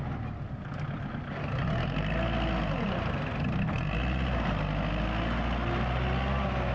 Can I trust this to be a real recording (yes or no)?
yes